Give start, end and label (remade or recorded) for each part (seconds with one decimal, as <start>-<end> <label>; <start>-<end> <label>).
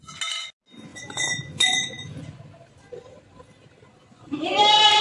0.0-0.9 recorded; 0.9-2.4 remade; 2.4-4.1 recorded; 4.1-4.6 remade; 4.6-5.0 recorded